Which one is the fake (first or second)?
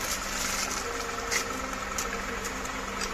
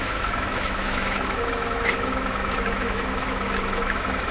second